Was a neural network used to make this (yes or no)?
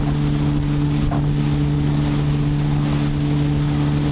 no